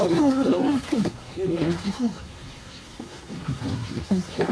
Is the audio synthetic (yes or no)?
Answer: yes